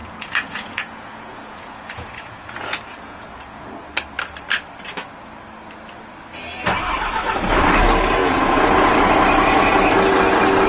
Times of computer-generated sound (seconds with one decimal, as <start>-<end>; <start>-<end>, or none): 0.0-3.7; 8.2-8.9